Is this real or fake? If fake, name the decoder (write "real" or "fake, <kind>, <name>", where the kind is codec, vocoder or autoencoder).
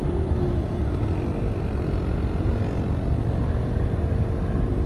real